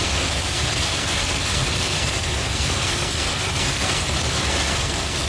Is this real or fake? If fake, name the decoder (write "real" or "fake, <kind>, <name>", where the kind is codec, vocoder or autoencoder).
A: fake, codec, SNAC